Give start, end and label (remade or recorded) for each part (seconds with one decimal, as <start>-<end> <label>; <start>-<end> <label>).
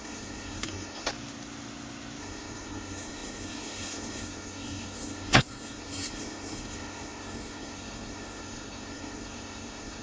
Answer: 0.0-1.1 remade; 1.1-2.2 recorded; 2.2-10.0 remade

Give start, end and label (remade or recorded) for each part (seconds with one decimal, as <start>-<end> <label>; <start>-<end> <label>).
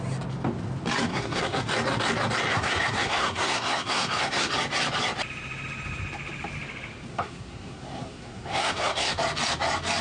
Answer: 0.0-1.1 recorded; 1.1-1.6 remade; 1.6-2.5 recorded; 2.5-4.5 remade; 4.5-7.1 recorded; 7.1-9.2 remade; 9.2-10.0 recorded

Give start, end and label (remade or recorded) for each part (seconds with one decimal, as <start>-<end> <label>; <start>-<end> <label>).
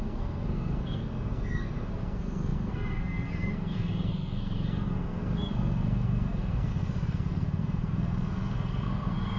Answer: 0.0-9.4 remade